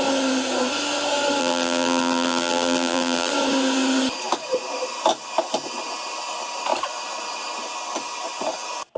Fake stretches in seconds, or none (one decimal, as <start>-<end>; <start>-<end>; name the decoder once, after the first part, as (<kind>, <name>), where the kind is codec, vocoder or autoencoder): 1.4-3.3 (vocoder, BigVGAN v2)